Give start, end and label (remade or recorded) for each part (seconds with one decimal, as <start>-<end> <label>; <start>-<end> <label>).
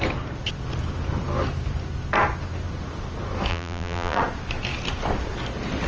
0.0-3.5 recorded; 3.5-4.2 remade; 4.2-5.9 recorded